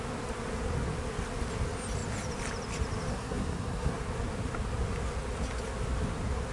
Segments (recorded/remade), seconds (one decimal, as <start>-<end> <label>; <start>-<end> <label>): 0.0-3.1 recorded; 3.1-3.9 remade; 3.9-6.5 recorded